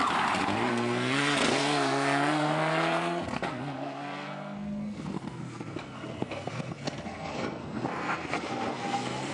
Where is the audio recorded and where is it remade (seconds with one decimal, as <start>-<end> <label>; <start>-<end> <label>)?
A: 0.0-0.7 recorded; 0.7-9.3 remade